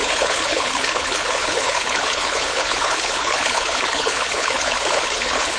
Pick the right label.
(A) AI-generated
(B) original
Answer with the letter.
A